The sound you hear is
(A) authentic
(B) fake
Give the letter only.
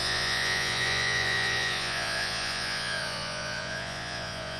B